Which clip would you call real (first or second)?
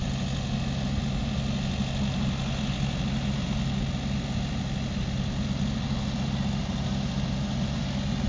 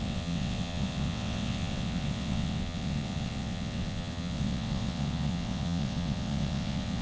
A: first